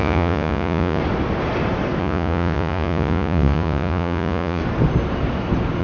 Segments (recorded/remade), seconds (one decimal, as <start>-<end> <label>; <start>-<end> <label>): 0.0-1.0 remade; 1.0-2.0 recorded; 2.0-4.6 remade; 4.6-5.8 recorded